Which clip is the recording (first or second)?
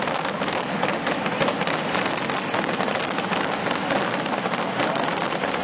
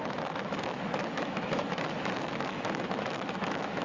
first